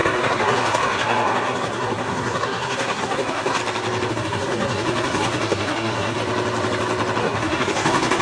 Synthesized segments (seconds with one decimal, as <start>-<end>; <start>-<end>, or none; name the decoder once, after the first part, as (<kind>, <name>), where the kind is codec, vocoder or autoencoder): 0.0-3.6 (codec, SNAC); 4.1-6.2; 7.2-8.2